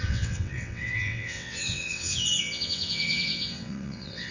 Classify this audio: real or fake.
fake